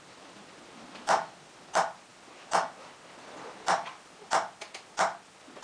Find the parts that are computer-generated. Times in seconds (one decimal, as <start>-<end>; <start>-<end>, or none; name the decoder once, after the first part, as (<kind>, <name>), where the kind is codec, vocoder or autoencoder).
none